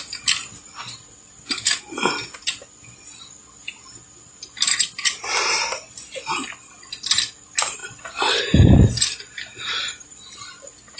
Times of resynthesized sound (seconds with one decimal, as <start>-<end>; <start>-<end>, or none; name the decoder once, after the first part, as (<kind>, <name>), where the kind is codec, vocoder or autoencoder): none